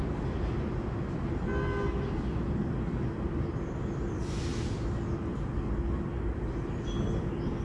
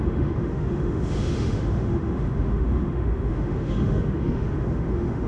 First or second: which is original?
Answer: first